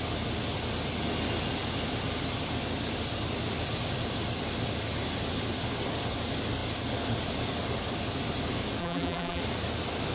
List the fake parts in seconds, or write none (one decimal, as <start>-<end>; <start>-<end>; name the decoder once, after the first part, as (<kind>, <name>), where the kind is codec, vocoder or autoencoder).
8.8-9.4 (vocoder, BigVGAN v2)